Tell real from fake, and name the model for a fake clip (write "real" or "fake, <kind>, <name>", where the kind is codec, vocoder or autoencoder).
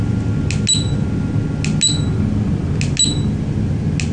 real